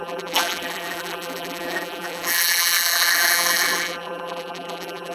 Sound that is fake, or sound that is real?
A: fake